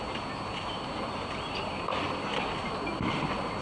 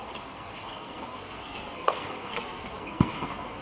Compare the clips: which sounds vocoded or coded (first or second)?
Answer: second